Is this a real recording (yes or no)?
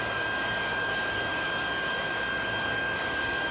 no